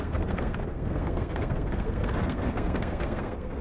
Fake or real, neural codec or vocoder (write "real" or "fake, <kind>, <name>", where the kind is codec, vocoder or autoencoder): fake, codec, SNAC